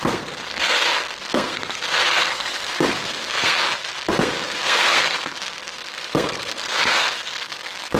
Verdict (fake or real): fake